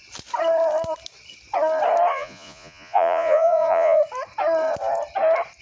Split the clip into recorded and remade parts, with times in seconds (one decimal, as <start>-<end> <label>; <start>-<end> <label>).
0.0-2.1 recorded; 2.1-4.0 remade; 4.0-5.6 recorded